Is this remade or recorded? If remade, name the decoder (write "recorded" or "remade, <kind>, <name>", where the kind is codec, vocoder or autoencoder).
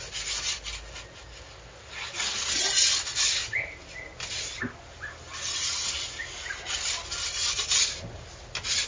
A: recorded